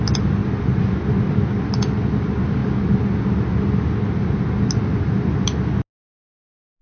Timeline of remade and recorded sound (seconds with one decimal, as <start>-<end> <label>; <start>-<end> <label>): 0.0-6.8 recorded

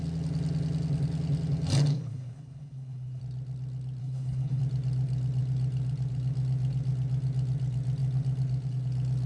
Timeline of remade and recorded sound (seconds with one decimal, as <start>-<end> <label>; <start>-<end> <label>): 0.0-1.9 recorded; 1.9-3.2 remade; 3.2-4.0 recorded; 4.0-4.6 remade; 4.6-9.3 recorded

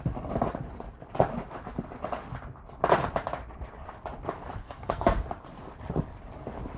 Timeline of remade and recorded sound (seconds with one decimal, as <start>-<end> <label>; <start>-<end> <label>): 0.0-4.6 recorded; 4.6-5.2 remade; 5.2-6.8 recorded

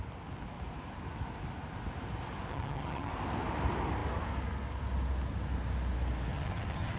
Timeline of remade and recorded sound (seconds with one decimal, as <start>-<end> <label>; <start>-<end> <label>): 0.0-2.5 recorded; 2.5-3.1 remade; 3.1-6.3 recorded; 6.3-7.0 remade